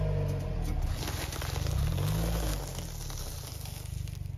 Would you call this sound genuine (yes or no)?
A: yes